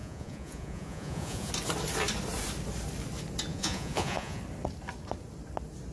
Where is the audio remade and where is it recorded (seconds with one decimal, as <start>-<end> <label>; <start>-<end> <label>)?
0.0-1.5 remade; 1.5-3.5 recorded; 3.5-4.4 remade; 4.4-5.9 recorded